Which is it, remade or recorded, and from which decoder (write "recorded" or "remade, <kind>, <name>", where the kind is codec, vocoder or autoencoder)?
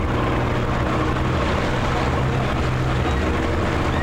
recorded